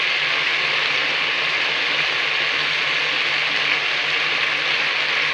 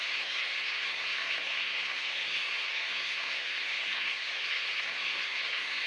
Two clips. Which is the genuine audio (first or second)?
first